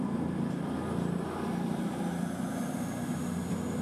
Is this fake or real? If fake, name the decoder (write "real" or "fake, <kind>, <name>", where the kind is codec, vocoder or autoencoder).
real